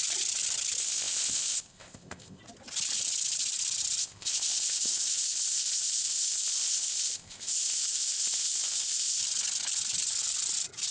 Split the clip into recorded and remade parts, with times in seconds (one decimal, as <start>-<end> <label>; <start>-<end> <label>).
0.0-0.8 recorded; 0.8-2.4 remade; 2.4-4.0 recorded; 4.0-9.2 remade; 9.2-10.9 recorded